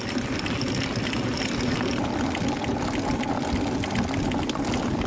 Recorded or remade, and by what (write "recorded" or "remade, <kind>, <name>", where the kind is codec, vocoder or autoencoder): recorded